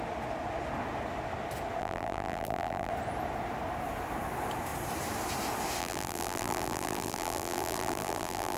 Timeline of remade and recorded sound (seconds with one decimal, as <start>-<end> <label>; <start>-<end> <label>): 0.0-1.8 recorded; 1.8-2.9 remade; 2.9-5.8 recorded; 5.8-8.6 remade